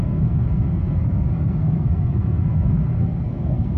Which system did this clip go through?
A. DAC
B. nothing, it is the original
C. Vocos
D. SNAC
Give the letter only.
D